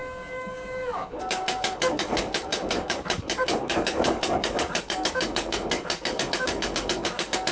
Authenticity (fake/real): fake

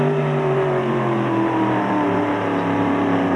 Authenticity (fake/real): fake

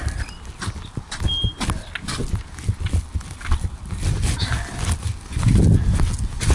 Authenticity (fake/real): real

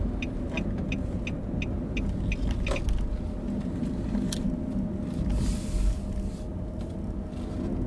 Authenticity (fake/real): real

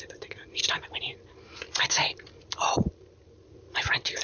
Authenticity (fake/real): fake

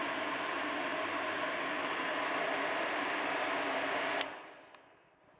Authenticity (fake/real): real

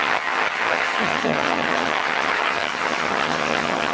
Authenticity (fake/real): fake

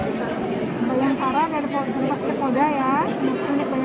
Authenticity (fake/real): real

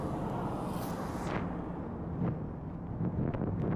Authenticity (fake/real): real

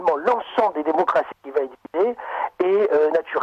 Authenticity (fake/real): real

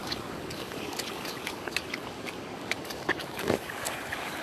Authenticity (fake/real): fake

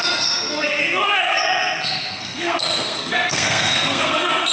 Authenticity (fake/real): fake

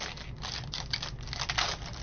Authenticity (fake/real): real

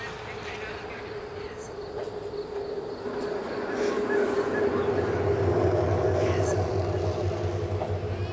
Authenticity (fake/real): real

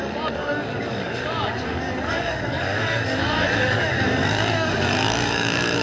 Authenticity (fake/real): fake